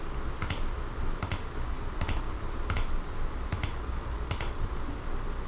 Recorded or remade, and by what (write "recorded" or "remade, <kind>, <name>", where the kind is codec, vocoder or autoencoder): recorded